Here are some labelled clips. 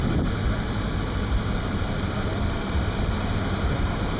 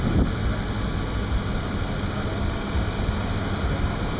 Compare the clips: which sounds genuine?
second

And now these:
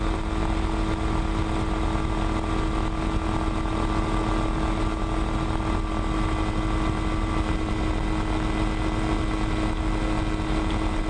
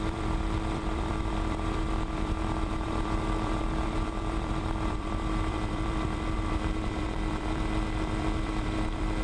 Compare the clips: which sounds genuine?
first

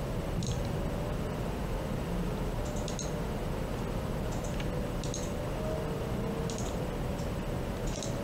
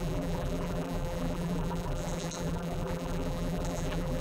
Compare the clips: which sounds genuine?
first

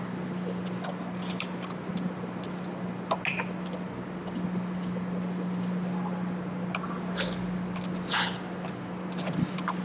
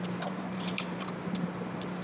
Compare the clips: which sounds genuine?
first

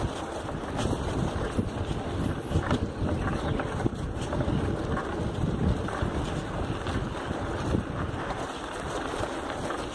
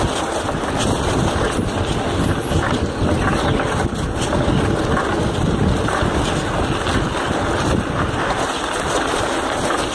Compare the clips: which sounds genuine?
second